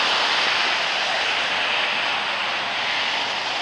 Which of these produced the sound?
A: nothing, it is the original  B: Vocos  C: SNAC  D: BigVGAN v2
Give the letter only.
A